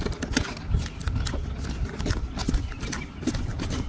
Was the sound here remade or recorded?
recorded